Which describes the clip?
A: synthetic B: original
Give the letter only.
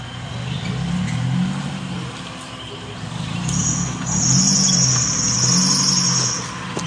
B